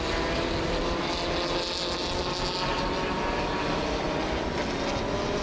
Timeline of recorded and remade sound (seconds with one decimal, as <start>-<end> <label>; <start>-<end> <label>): 0.0-5.4 recorded